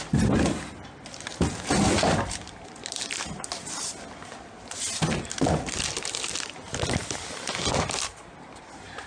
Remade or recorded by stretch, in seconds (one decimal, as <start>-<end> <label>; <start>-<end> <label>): 0.0-9.1 recorded